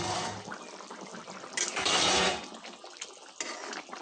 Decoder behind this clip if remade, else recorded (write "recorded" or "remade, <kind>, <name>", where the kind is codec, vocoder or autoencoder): recorded